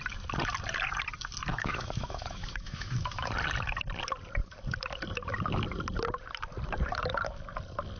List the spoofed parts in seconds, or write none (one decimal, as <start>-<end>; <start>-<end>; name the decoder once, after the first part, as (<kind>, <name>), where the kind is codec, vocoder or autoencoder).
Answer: 1.5-3.3 (autoencoder, DAC-VAE)

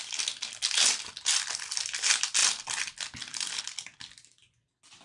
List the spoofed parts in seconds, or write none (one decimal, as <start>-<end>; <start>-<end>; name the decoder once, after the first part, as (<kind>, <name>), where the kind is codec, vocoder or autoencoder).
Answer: none